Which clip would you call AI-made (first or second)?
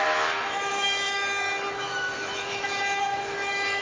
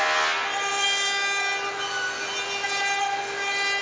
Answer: first